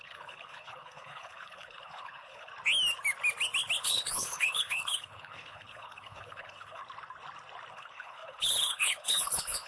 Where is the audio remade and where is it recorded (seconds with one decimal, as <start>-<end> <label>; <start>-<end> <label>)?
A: 0.0-2.5 remade; 2.5-3.8 recorded; 3.8-6.8 remade; 6.8-7.7 recorded; 7.7-9.7 remade